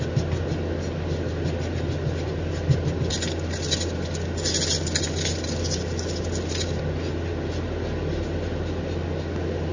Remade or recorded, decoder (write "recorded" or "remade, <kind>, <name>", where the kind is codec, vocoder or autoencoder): recorded